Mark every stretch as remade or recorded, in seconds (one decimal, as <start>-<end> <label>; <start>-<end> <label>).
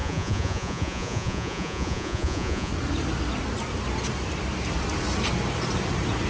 0.0-2.7 remade; 2.7-6.3 recorded